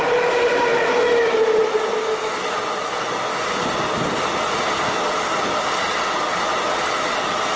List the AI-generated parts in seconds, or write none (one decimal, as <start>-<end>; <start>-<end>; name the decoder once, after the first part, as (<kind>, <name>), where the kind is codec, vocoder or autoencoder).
none